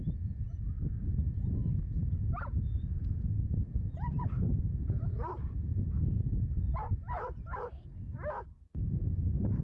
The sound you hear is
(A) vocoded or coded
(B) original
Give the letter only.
A